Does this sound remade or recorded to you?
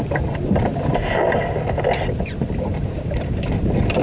remade